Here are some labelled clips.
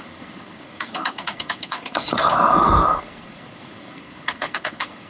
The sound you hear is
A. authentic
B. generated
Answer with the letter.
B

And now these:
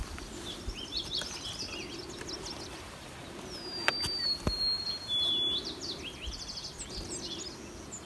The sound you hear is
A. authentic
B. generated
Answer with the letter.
A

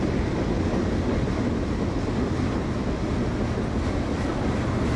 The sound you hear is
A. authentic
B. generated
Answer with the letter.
A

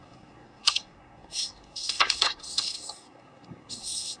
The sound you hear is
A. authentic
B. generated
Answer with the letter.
B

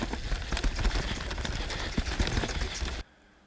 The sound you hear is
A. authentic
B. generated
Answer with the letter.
A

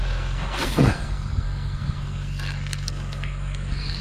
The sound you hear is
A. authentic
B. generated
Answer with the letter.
B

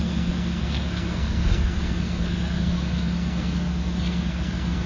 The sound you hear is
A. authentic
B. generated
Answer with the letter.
B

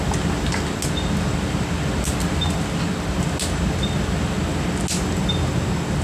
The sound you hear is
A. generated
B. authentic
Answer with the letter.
B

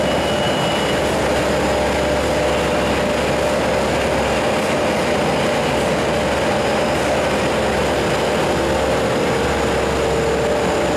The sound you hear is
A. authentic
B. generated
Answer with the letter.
A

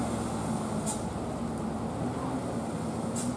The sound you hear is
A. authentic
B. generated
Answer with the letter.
A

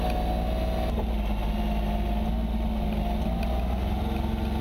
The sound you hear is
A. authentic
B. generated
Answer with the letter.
A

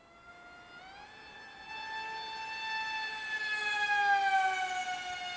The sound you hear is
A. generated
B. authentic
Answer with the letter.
B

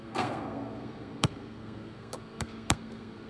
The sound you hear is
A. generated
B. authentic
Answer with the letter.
A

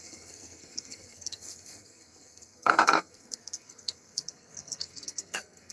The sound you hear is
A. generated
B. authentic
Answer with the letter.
A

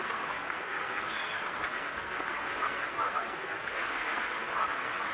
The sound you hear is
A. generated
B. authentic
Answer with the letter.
A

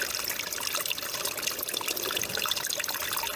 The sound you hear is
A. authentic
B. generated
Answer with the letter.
A